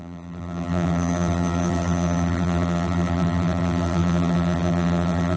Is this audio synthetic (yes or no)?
yes